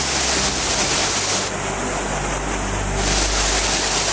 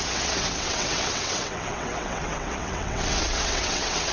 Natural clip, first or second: first